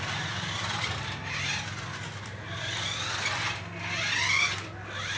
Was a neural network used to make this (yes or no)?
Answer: no